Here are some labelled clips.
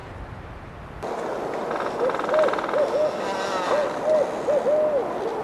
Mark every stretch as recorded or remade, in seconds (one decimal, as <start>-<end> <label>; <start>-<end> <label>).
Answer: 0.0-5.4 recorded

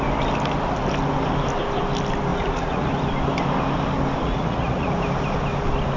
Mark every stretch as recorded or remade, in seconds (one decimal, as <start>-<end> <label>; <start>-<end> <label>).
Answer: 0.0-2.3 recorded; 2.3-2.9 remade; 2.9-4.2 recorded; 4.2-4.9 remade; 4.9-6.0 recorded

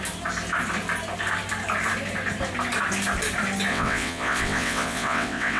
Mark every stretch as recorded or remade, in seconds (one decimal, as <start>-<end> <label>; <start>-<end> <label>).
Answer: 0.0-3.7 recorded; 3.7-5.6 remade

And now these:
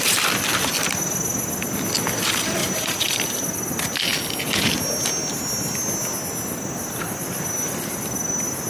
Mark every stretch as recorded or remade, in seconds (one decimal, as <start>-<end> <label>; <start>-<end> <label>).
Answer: 0.0-2.6 recorded; 2.6-3.1 remade; 3.1-8.7 recorded